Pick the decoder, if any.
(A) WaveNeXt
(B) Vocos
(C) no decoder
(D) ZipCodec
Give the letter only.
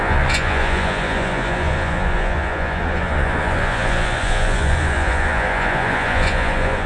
B